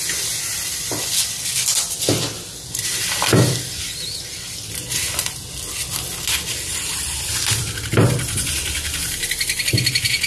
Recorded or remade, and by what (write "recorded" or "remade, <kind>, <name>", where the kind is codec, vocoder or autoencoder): recorded